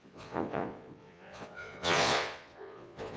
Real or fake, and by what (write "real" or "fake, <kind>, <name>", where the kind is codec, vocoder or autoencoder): fake, vocoder, Vocos